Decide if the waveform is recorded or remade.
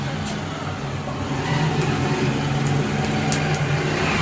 recorded